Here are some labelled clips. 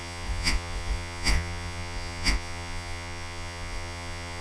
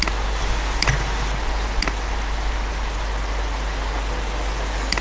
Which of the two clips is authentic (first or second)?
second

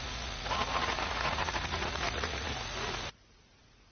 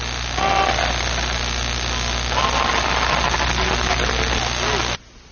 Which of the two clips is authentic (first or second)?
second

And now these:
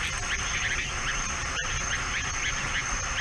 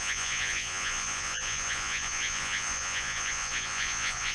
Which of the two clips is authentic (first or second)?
first